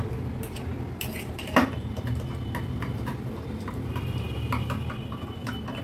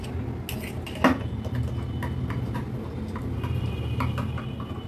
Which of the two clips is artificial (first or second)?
first